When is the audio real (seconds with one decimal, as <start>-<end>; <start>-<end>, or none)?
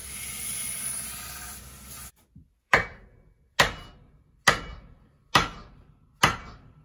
1.6-2.0; 2.8-6.8